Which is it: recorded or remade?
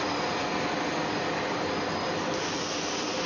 recorded